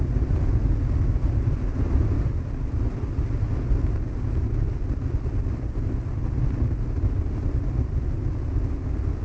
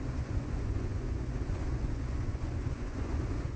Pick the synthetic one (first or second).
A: second